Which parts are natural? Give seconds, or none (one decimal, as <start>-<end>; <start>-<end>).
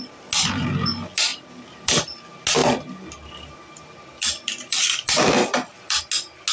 0.0-1.3; 2.0-2.6; 6.0-6.5